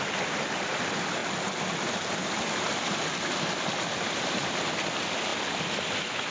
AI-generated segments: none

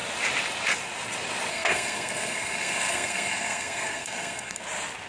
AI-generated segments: 1.5-4.6 (codec, SNAC)

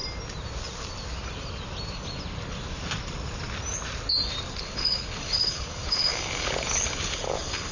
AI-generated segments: 4.6-7.7 (codec, HILCodec)

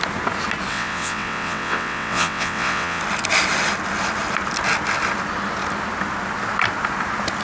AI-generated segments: 0.7-3.0 (vocoder, WaveNeXt)

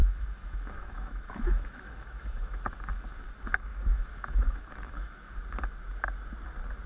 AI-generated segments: 0.0-2.6 (autoencoder, DAC-VAE); 3.7-5.4

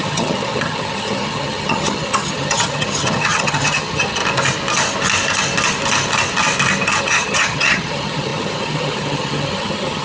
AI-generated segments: 0.0-4.2 (vocoder, HiFi-GAN); 7.0-10.0